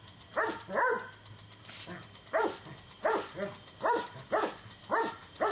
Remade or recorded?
recorded